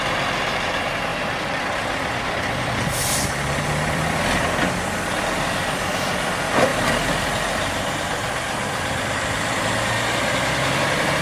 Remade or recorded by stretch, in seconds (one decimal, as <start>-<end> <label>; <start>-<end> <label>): 0.0-1.1 recorded; 1.1-4.6 remade; 4.6-6.7 recorded; 6.7-9.6 remade; 9.6-11.2 recorded